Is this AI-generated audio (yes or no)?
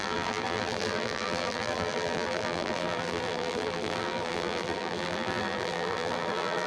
yes